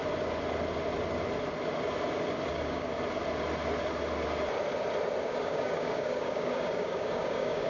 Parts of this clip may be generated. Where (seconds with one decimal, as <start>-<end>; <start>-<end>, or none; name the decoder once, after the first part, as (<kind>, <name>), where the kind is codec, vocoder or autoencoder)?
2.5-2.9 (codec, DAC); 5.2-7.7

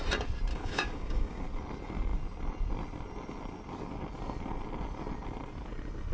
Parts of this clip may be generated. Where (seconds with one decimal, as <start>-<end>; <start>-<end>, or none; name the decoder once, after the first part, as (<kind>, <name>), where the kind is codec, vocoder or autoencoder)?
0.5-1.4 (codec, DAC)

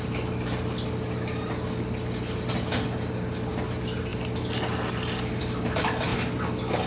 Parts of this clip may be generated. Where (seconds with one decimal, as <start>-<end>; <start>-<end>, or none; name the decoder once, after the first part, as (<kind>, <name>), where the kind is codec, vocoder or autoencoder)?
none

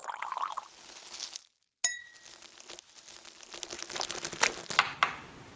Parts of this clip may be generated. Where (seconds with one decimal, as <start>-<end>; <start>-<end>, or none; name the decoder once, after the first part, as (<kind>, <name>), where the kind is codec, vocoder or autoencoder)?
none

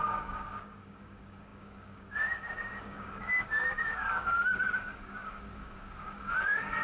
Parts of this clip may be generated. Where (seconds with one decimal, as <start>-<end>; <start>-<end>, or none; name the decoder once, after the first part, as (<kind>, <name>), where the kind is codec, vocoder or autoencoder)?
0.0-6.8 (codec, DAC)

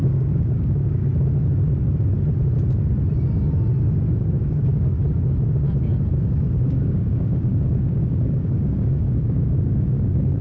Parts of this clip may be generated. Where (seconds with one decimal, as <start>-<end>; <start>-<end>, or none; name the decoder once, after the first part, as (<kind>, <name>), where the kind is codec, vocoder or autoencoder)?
0.0-1.1 (codec, DAC); 4.1-4.9; 6.1-10.4